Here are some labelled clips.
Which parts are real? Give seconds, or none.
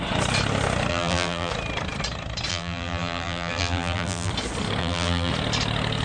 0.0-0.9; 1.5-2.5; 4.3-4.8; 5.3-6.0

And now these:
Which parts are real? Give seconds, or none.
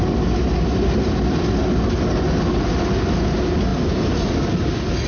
0.0-5.1